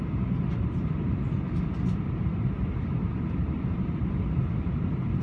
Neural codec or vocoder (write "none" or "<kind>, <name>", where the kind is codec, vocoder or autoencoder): vocoder, BigVGAN v2